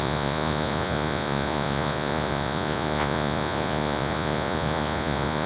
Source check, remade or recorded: remade